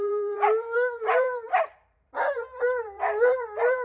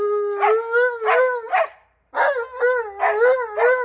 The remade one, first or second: first